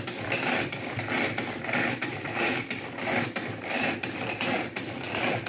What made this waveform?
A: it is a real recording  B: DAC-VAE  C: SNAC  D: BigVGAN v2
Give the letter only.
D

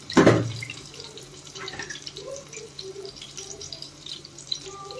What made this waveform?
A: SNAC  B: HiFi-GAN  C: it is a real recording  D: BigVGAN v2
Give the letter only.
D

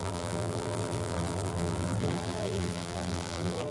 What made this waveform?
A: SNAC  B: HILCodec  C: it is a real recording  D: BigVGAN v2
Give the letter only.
D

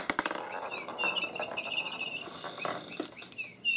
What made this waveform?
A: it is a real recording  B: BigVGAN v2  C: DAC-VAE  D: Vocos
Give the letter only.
A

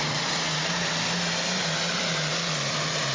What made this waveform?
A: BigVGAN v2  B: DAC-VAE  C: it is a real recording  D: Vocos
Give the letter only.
A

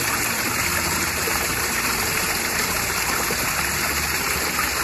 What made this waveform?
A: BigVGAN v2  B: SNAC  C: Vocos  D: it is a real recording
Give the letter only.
A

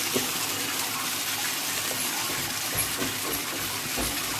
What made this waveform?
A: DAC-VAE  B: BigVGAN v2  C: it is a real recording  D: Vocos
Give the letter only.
C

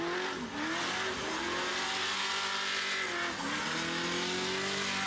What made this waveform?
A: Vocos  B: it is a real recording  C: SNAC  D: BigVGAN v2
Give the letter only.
B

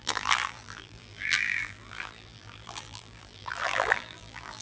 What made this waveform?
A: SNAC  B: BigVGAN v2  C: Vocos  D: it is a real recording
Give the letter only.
B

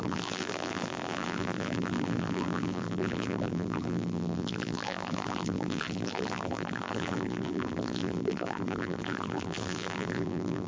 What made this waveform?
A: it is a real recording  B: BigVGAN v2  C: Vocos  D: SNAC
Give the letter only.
B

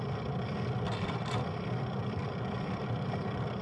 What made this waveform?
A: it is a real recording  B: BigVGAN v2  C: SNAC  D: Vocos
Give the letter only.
A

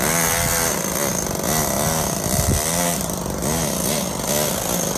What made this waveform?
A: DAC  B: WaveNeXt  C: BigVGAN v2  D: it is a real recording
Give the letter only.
D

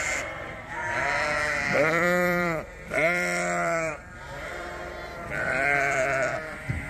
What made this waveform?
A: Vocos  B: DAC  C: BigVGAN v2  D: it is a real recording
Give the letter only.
C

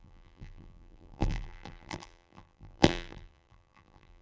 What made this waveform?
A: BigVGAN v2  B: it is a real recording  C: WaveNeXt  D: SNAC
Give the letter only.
A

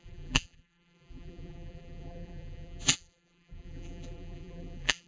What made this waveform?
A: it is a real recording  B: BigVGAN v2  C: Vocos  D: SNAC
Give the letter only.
B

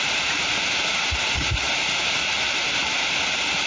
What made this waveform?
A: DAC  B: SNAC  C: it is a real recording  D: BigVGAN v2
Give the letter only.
D